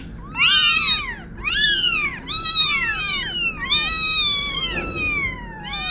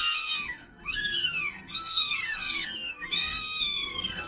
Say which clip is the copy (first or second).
second